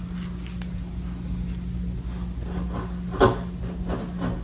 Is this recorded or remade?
recorded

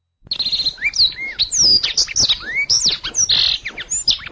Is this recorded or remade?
recorded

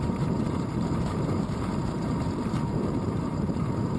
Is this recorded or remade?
remade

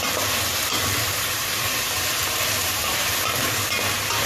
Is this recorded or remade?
remade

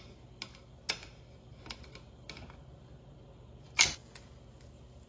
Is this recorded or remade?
recorded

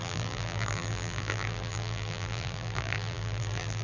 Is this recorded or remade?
remade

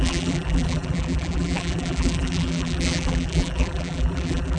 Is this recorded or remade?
remade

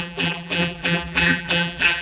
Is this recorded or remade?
remade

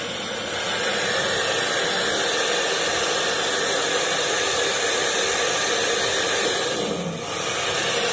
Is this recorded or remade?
recorded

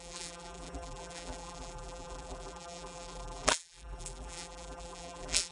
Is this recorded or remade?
remade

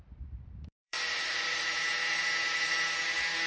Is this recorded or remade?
remade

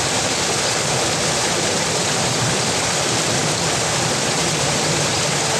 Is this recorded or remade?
remade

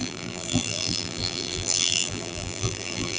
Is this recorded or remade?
remade